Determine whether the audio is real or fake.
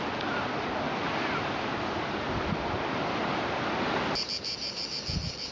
real